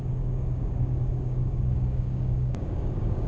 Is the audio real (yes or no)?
no